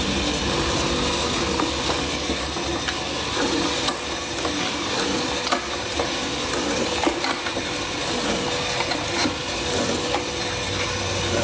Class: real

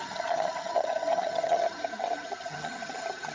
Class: fake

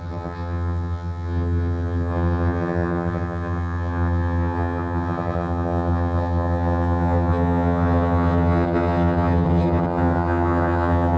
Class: fake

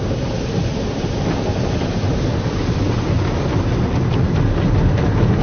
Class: real